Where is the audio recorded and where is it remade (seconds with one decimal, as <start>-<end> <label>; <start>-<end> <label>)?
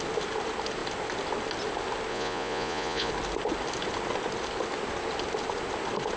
0.0-2.1 recorded; 2.1-3.1 remade; 3.1-6.2 recorded